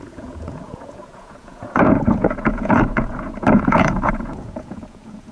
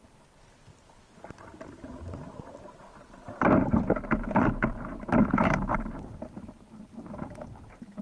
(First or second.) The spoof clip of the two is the first